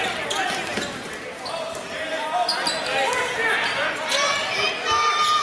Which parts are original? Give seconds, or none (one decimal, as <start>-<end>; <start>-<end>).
0.0-5.4